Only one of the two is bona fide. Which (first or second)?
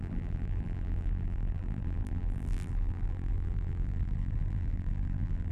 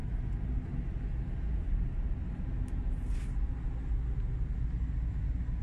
second